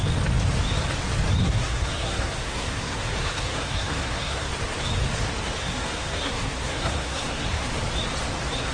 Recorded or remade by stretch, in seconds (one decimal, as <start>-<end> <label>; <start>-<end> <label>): 0.0-1.4 recorded; 1.4-4.5 remade; 4.5-5.6 recorded; 5.6-7.7 remade; 7.7-8.7 recorded